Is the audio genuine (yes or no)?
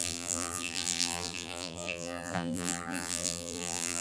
no